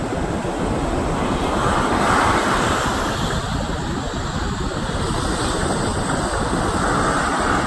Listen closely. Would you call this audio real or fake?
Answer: real